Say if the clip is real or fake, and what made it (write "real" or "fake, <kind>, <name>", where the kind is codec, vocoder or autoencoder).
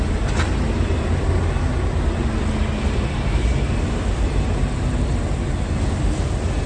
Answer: real